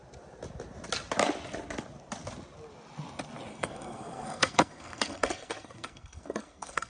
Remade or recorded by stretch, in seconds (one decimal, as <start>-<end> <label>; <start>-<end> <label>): 0.0-3.5 recorded; 3.5-6.9 remade